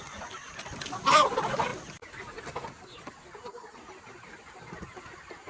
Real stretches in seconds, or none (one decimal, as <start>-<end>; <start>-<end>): 0.0-5.5